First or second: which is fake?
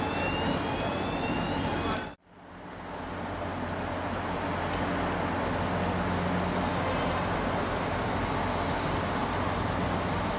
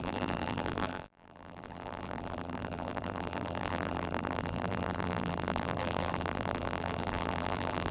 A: second